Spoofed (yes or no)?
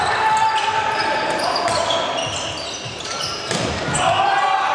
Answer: no